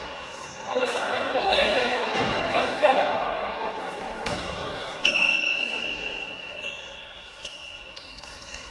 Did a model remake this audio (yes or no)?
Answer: yes